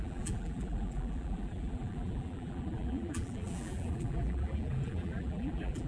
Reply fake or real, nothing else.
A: fake